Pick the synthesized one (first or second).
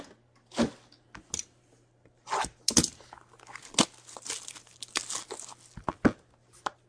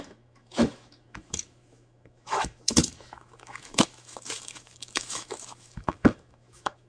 second